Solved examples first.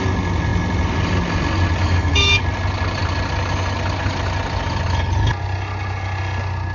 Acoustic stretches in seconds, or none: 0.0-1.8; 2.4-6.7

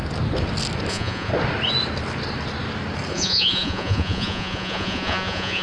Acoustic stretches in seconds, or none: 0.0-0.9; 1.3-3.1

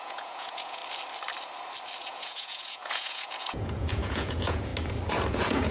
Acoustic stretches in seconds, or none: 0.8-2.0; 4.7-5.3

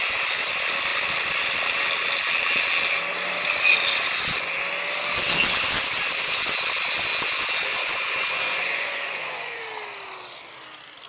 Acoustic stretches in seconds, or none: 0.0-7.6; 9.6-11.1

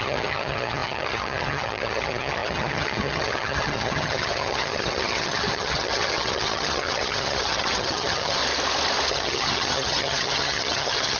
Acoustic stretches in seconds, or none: 8.4-9.1